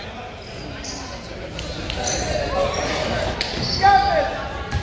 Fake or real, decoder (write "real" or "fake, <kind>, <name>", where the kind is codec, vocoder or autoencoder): real